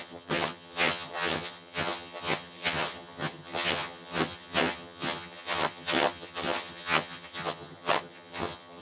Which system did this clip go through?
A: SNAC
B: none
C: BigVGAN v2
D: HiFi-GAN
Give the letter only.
D